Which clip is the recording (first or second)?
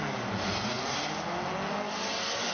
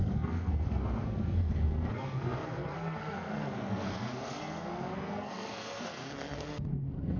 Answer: first